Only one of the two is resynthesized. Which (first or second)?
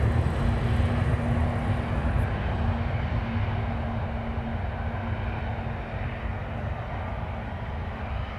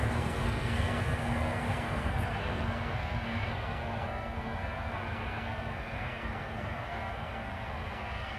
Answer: second